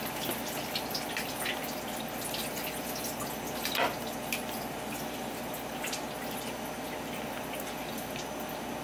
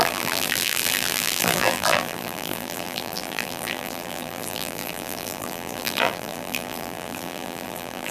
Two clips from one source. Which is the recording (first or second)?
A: first